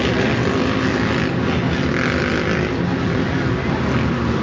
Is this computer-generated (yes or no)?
no